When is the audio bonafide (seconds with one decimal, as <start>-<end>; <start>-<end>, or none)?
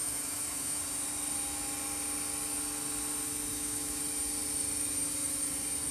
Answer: 0.8-3.5; 4.0-5.9